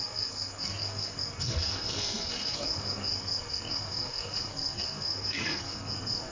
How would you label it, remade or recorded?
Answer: remade